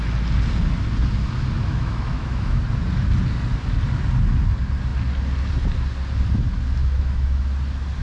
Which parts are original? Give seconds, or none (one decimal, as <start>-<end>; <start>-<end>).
0.0-1.7; 2.6-6.8; 7.4-8.0